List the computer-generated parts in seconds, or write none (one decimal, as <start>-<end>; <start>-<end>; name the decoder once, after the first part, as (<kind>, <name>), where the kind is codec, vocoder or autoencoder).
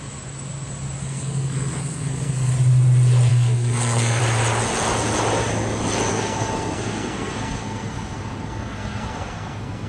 1.0-2.5 (codec, SNAC); 3.3-4.2; 6.1-9.9